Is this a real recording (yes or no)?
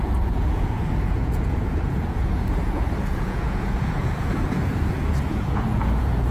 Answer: no